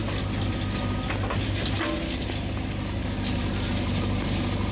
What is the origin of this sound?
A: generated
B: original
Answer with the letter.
B